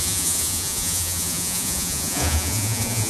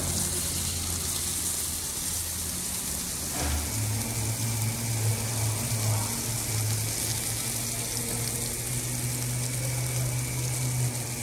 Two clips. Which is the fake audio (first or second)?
first